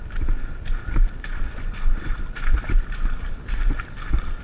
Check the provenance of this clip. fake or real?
real